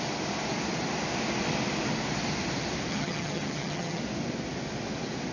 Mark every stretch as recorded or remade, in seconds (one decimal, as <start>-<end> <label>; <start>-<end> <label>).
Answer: 0.0-2.9 recorded; 2.9-4.0 remade; 4.0-5.3 recorded